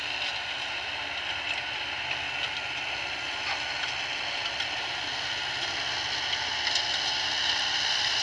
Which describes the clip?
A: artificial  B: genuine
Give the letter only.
B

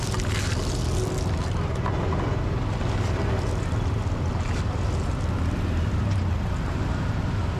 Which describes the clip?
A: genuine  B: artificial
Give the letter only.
A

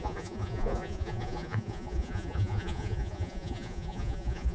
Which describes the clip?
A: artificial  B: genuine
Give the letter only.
A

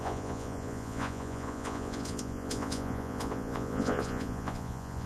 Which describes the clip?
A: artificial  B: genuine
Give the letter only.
A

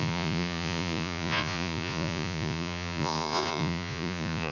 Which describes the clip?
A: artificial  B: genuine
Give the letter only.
A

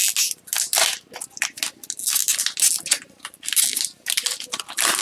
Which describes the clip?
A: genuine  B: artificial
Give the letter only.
A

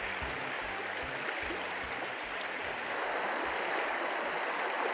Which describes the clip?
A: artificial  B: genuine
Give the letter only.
B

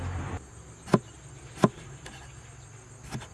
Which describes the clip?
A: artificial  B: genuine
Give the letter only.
B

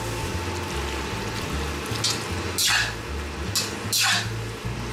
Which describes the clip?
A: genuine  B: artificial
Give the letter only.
A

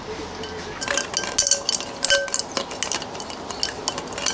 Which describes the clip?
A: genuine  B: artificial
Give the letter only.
A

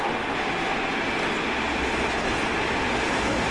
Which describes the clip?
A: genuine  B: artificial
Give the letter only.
A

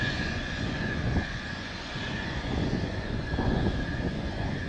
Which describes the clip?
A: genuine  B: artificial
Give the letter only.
B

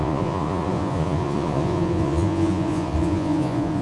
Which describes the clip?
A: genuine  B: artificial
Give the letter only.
B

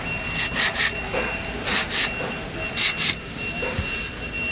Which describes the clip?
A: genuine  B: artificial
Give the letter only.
A